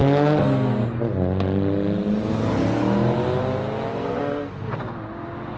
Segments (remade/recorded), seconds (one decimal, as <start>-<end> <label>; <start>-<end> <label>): 0.0-3.9 recorded; 3.9-4.8 remade; 4.8-5.6 recorded

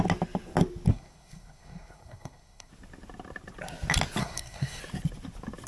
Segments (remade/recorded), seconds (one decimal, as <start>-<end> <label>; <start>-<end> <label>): 0.0-0.9 recorded; 0.9-2.7 remade; 2.7-4.2 recorded; 4.2-4.8 remade; 4.8-5.7 recorded

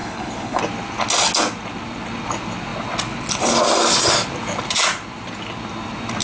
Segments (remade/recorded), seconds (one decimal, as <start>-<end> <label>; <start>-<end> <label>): 0.0-0.6 remade; 0.6-6.2 recorded